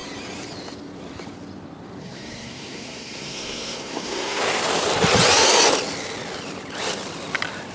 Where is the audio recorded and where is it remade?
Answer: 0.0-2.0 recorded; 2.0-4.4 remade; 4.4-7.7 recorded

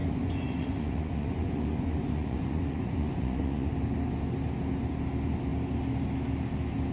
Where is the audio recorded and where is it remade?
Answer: 0.0-3.7 remade; 3.7-6.9 recorded

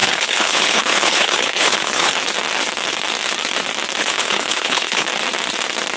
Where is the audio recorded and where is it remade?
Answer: 0.0-2.1 remade; 2.1-4.0 recorded; 4.0-5.1 remade; 5.1-6.0 recorded

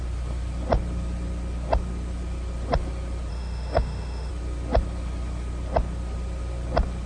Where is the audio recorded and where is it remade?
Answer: 0.0-3.3 recorded; 3.3-4.3 remade; 4.3-7.1 recorded

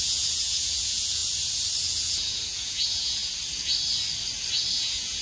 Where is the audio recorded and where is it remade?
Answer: 0.0-1.2 remade; 1.2-1.8 recorded; 1.8-3.2 remade; 3.2-4.7 recorded; 4.7-5.2 remade